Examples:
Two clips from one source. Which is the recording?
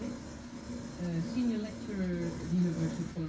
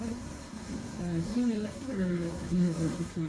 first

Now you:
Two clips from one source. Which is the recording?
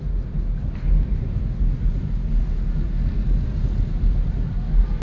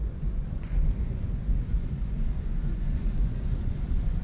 first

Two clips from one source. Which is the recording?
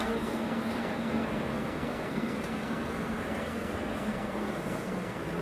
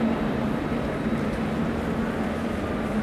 second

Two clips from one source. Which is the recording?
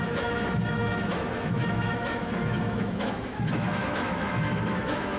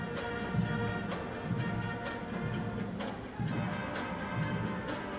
second